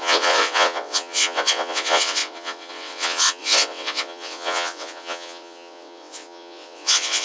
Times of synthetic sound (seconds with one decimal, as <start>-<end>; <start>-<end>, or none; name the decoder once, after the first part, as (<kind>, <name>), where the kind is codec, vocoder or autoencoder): 0.0-7.2 (vocoder, WaveNeXt)